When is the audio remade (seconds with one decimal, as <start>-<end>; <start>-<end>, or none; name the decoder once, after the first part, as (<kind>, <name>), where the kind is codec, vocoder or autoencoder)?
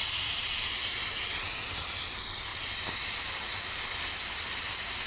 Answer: 0.0-2.1 (vocoder, BigVGAN v2)